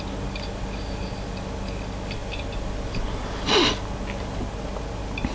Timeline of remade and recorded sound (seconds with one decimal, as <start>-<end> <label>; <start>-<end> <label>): 0.0-5.3 recorded